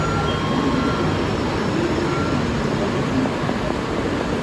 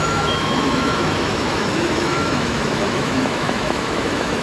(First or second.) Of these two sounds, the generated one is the second